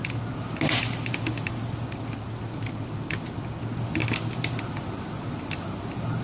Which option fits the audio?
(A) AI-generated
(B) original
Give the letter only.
B